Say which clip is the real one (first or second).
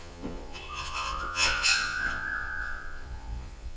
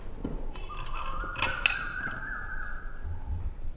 second